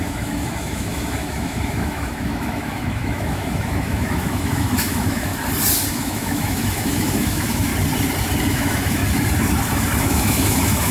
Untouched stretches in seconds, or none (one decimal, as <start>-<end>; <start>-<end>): 5.3-5.9; 7.7-8.5; 9.0-10.0